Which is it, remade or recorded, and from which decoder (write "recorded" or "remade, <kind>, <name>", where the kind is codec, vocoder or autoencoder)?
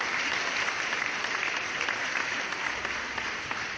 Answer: recorded